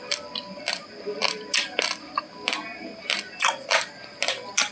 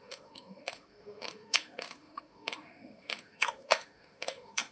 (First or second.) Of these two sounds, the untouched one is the first